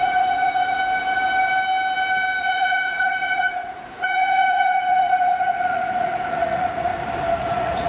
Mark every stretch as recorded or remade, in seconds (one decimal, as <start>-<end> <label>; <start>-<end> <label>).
0.0-0.8 remade; 0.8-2.4 recorded; 2.4-6.9 remade; 6.9-7.4 recorded; 7.4-7.9 remade